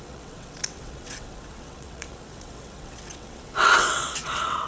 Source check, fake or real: fake